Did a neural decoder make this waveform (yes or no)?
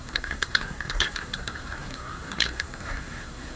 yes